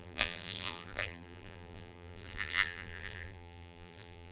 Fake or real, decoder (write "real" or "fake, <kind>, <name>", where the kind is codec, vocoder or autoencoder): fake, vocoder, BigVGAN v2